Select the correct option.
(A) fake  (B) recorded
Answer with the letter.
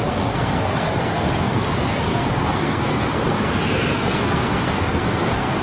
A